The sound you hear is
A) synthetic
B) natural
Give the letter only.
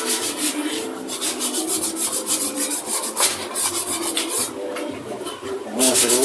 B